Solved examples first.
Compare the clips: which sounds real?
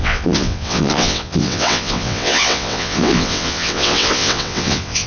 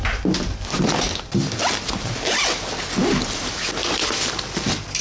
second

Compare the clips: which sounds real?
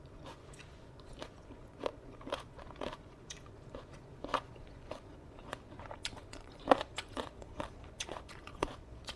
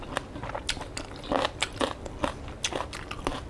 second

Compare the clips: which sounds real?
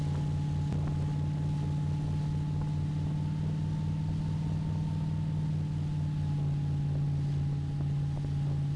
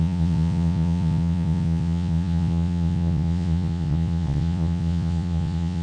first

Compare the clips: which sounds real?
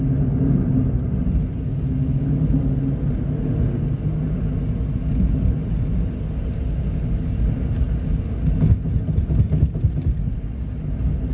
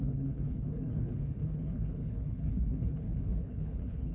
first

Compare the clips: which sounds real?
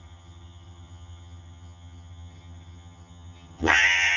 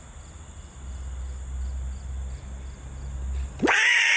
second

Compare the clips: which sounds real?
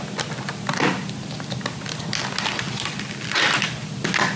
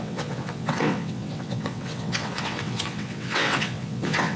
first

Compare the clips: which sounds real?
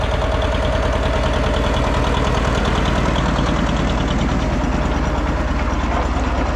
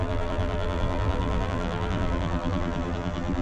first